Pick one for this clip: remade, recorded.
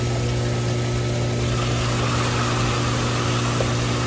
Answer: recorded